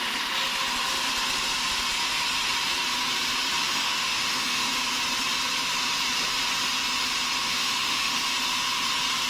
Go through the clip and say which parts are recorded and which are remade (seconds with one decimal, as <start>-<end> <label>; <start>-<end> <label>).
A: 0.0-3.7 recorded; 3.7-4.7 remade; 4.7-7.4 recorded; 7.4-8.2 remade; 8.2-9.3 recorded